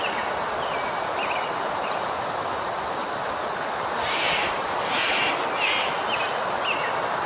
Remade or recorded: recorded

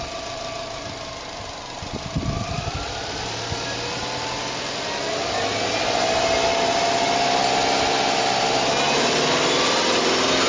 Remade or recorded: recorded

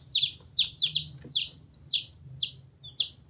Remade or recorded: recorded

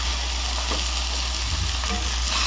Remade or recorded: recorded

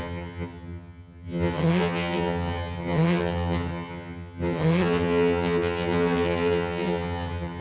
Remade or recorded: remade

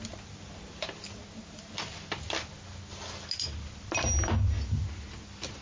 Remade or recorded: recorded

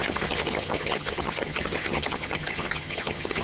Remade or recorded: remade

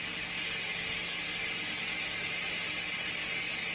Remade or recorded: recorded